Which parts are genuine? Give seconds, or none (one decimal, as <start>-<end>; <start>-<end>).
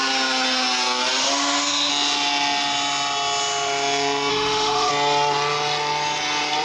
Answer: 0.0-1.2; 1.9-4.3; 4.9-6.6